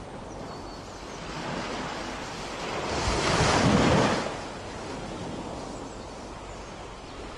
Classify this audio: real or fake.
real